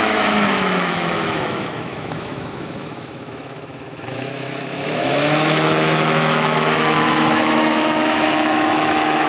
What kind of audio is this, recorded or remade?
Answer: remade